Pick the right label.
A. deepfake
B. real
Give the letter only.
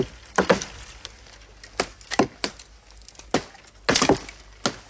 B